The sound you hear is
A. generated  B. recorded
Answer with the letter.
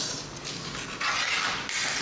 B